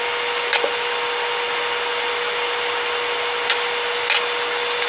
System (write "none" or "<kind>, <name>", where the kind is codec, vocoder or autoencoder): none